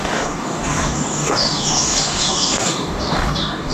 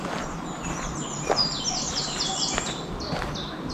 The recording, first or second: second